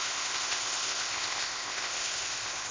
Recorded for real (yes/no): no